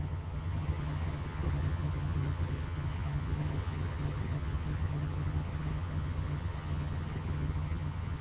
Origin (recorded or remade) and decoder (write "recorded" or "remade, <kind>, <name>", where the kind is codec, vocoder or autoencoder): remade, vocoder, HiFi-GAN